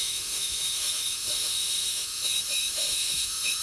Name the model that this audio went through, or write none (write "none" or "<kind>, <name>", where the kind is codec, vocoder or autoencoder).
autoencoder, DAC-VAE